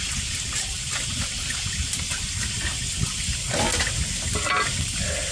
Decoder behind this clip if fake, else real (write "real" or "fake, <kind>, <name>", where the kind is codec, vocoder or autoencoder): real